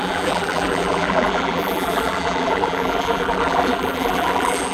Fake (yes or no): yes